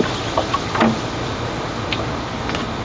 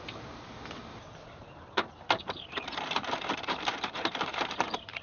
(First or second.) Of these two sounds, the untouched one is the first